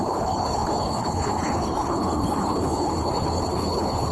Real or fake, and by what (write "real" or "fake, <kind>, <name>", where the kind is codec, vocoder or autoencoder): fake, codec, HILCodec